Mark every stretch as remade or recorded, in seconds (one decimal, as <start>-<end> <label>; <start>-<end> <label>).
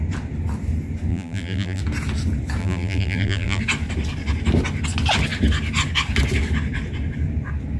0.0-1.1 recorded; 1.1-1.8 remade; 1.8-2.6 recorded; 2.6-3.6 remade; 3.6-7.8 recorded